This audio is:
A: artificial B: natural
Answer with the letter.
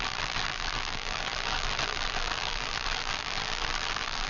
A